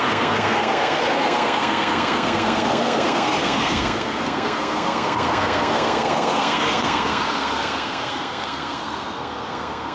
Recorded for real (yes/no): no